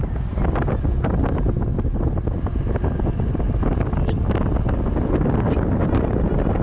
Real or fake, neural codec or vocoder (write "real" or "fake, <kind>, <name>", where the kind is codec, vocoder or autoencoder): real